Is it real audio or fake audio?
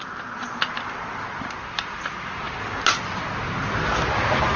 real